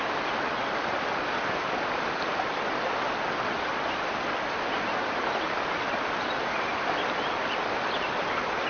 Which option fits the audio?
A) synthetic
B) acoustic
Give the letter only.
B